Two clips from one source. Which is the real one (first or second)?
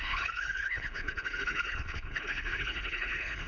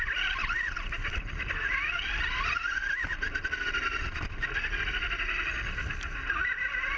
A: second